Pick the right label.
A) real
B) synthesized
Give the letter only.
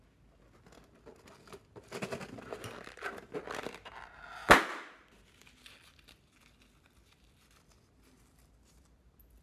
A